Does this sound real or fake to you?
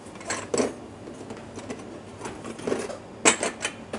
real